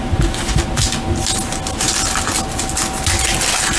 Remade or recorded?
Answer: recorded